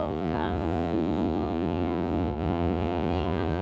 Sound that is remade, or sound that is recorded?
remade